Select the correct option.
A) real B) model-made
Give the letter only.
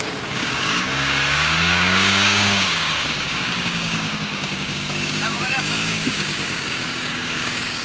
B